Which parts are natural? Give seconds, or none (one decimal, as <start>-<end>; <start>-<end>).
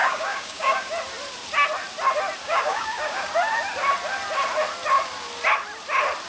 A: 0.9-2.4; 3.3-6.3